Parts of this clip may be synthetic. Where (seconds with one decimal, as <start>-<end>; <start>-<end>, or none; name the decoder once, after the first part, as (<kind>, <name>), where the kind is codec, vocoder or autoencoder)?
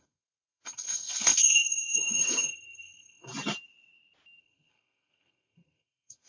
0.0-3.3 (codec, SNAC); 4.4-6.3